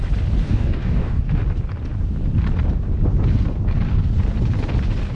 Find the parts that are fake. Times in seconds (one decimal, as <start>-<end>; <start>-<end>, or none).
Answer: 0.4-1.2